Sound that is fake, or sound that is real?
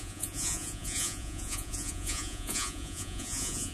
fake